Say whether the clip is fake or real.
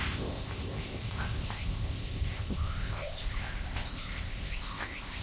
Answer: fake